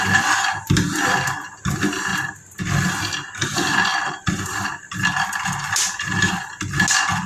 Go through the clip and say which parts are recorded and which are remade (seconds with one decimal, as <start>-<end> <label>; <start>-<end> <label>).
0.0-2.1 recorded; 2.1-2.6 remade; 2.6-3.9 recorded; 3.9-6.3 remade; 6.3-7.3 recorded